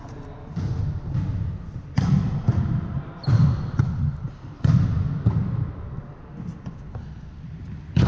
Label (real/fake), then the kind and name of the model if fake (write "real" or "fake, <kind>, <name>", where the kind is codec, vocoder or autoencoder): real